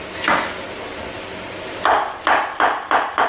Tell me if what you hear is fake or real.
real